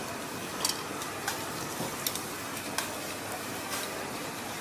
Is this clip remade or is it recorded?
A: recorded